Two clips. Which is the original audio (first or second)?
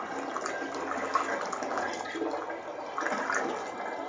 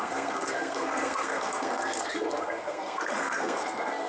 first